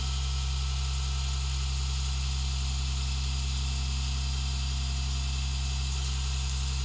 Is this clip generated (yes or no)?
no